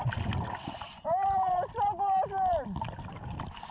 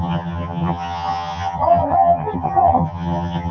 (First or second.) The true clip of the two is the first